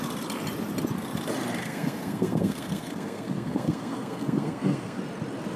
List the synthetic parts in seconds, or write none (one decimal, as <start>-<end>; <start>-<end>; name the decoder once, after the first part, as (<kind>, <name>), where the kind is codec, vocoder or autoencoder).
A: 1.6-5.0 (codec, SNAC)